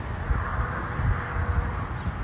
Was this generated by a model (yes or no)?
no